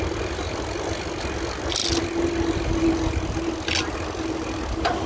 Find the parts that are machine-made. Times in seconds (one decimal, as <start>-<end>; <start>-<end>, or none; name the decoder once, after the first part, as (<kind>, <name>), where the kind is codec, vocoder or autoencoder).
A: none